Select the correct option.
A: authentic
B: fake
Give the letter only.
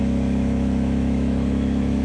B